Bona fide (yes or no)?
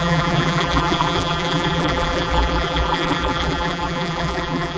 no